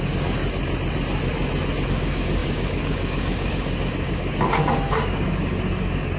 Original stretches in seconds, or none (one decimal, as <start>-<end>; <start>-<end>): 0.4-1.9